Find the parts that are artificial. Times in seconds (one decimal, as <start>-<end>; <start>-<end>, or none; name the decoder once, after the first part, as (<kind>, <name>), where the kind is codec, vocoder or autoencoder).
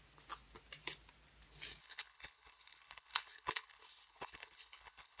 1.8-5.2 (codec, HILCodec)